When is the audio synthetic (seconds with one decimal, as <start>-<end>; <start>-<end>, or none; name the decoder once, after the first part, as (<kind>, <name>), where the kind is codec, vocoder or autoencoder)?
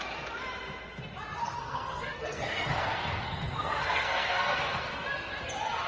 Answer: 1.4-4.9 (codec, SNAC)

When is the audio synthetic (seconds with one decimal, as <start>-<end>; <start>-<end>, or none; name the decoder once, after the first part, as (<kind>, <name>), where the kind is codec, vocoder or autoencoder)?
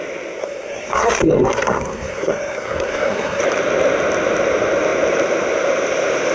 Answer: 0.4-3.4 (codec, SNAC)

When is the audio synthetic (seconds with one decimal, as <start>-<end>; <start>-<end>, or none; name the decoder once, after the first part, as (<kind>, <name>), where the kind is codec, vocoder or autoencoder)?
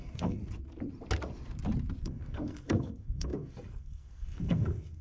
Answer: 0.0-0.4 (codec, SNAC); 2.0-5.0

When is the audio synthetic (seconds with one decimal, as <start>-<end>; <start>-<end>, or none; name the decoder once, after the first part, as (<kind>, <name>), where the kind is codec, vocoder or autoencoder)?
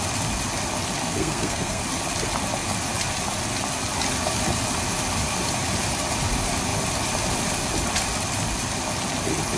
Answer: 1.0-1.8 (codec, SNAC)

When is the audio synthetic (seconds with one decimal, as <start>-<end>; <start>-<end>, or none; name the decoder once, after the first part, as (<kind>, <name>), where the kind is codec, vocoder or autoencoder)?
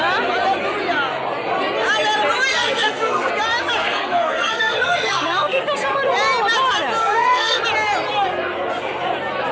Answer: 2.5-3.3 (codec, SNAC); 3.8-5.6; 7.0-7.6